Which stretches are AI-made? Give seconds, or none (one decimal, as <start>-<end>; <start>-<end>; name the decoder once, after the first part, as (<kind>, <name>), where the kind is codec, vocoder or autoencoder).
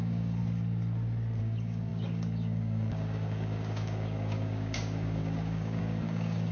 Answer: 0.0-0.4 (codec, DAC); 1.4-6.5